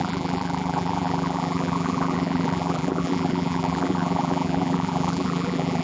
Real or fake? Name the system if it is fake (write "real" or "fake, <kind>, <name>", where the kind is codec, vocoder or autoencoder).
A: fake, vocoder, BigVGAN v2